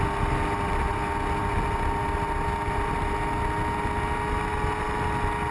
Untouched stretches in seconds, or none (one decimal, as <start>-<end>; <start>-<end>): 0.0-5.5

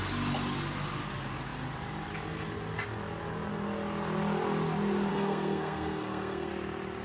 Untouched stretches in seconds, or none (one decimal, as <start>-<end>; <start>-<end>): 0.0-5.1; 6.5-7.0

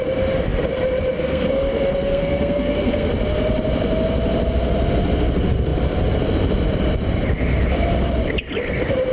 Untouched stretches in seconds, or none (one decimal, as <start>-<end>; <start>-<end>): 0.0-1.2; 3.1-9.1

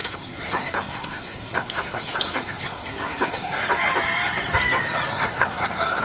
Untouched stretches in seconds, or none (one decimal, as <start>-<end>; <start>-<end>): 3.6-5.1

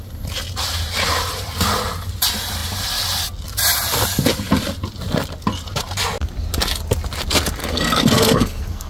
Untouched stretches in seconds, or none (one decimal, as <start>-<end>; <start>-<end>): 0.0-7.6

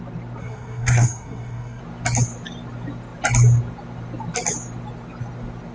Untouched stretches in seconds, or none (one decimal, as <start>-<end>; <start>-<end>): 0.0-0.4; 1.8-5.7

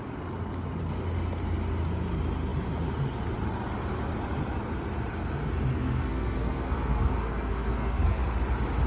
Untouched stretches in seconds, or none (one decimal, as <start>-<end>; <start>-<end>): 0.0-5.7; 8.2-8.9